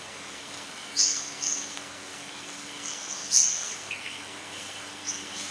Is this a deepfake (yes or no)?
yes